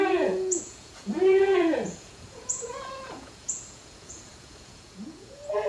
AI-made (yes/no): yes